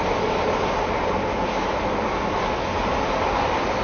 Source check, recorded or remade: recorded